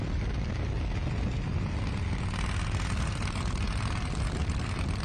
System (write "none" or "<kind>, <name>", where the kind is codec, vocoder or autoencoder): none